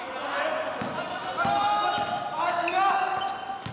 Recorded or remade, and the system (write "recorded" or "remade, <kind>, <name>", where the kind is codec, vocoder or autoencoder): recorded